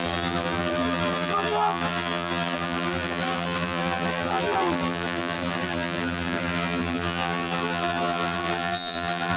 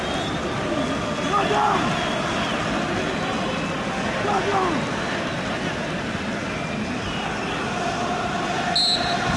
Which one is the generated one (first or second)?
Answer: first